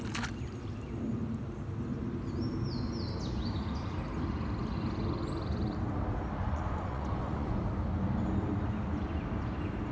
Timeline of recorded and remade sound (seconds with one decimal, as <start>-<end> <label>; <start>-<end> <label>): 0.0-6.4 recorded; 6.4-7.6 remade; 7.6-9.9 recorded

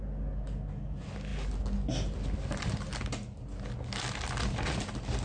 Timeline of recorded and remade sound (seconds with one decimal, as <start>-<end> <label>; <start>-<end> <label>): 0.0-5.2 recorded

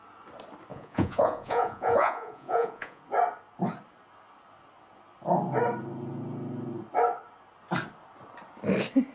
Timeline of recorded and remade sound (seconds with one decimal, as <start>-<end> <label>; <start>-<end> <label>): 0.0-0.7 recorded; 0.7-3.0 remade; 3.0-9.1 recorded

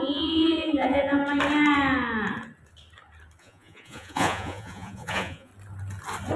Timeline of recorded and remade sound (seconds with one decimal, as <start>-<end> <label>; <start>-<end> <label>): 0.0-1.2 remade; 1.2-3.4 recorded; 3.4-5.5 remade; 5.5-6.4 recorded

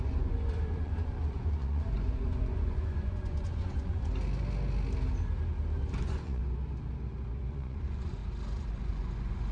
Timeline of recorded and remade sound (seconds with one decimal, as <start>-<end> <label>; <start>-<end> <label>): 0.0-4.0 remade; 4.0-6.0 recorded; 6.0-6.4 remade; 6.4-7.5 recorded; 7.5-8.2 remade; 8.2-8.7 recorded; 8.7-9.5 remade

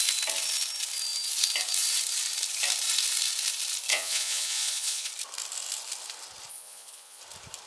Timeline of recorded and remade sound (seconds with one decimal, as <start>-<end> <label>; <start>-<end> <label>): 0.0-3.9 recorded; 3.9-5.1 remade; 5.1-6.5 recorded; 6.5-7.2 remade; 7.2-7.7 recorded

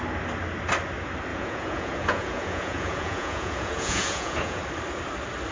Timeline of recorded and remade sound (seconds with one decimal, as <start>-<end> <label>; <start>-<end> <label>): 0.0-1.3 recorded; 1.3-4.6 remade; 4.6-5.5 recorded

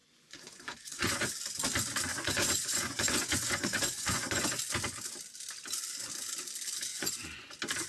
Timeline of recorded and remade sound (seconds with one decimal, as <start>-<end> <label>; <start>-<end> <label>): 0.0-1.3 remade; 1.3-2.1 recorded; 2.1-4.6 remade; 4.6-6.9 recorded; 6.9-7.5 remade; 7.5-7.9 recorded